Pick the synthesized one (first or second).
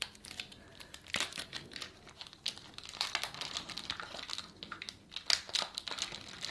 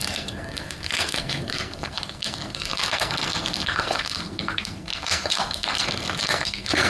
second